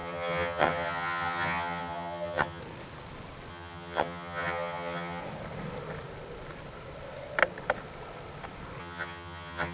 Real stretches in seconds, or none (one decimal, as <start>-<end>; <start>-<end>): 2.6-3.5; 5.2-8.8